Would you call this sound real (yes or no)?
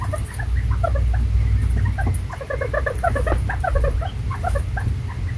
yes